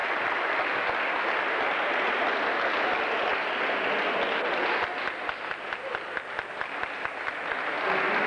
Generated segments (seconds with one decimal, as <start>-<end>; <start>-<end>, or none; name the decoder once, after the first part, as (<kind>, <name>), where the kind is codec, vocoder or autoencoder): none